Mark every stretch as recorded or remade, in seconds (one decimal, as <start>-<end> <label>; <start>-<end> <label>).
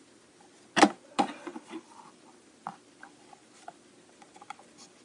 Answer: 0.0-5.0 recorded